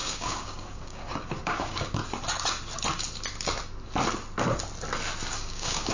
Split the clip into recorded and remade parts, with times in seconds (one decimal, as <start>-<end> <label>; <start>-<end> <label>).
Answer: 0.0-2.0 remade; 2.0-5.3 recorded; 5.3-5.9 remade